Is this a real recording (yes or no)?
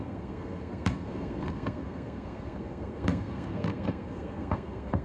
no